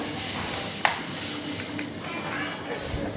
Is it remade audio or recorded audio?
recorded